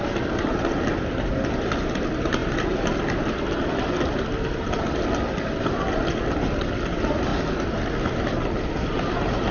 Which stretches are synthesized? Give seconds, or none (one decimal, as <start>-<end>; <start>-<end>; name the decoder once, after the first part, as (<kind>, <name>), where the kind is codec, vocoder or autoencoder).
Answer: none

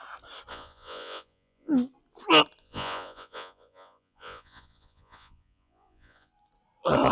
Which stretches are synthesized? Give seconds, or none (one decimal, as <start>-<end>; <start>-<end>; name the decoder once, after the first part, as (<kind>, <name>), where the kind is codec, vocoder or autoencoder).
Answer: 0.5-1.7 (vocoder, Vocos); 2.6-6.3